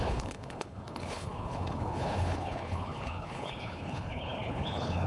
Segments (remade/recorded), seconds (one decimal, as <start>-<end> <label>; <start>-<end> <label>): 0.0-5.1 remade